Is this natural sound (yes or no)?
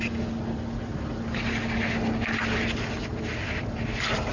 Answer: yes